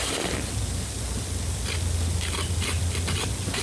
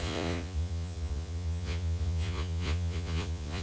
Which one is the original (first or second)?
first